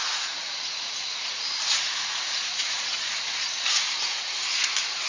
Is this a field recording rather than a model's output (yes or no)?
no